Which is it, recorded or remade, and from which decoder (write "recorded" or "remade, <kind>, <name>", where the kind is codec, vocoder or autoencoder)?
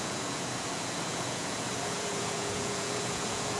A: remade, vocoder, Vocos